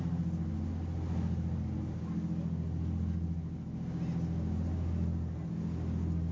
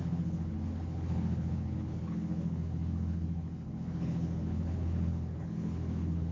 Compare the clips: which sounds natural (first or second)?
first